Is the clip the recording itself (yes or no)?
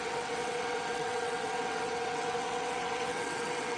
no